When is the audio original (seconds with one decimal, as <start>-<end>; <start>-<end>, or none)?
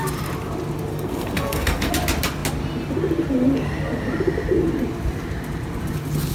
0.0-0.9; 1.9-6.3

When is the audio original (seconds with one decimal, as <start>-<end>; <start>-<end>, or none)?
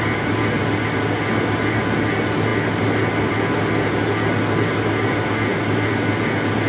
0.0-6.7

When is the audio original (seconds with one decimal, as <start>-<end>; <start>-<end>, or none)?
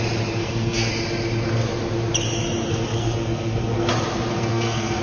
0.0-0.4; 0.9-2.7; 3.9-4.3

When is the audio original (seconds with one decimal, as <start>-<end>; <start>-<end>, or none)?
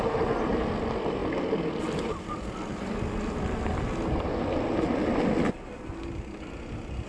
0.0-7.1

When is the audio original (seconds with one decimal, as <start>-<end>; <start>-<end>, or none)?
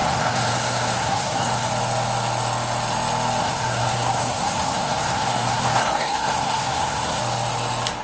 1.7-3.4; 7.2-8.0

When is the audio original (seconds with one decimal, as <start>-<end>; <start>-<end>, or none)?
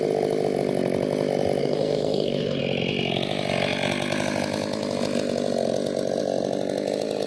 0.0-1.6; 2.6-7.3